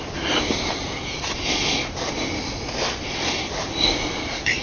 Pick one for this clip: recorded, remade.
recorded